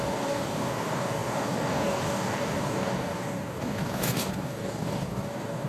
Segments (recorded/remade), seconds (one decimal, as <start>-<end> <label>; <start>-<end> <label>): 0.0-5.7 remade